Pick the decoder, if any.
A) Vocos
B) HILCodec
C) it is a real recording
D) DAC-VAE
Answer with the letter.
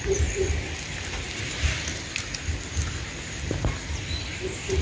C